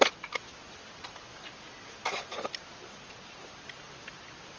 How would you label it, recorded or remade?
recorded